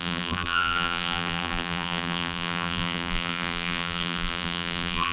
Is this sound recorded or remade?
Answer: remade